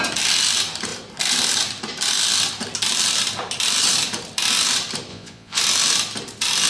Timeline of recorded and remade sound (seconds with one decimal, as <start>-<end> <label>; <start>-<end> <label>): 0.0-5.1 recorded; 5.1-5.6 remade; 5.6-6.7 recorded